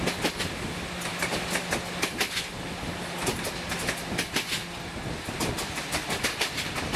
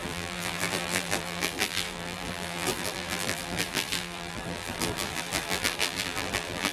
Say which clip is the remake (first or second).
second